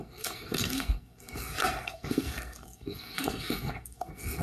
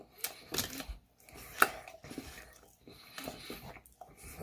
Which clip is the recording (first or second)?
second